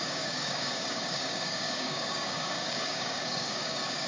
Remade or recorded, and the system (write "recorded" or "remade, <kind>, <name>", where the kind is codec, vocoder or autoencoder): remade, codec, DAC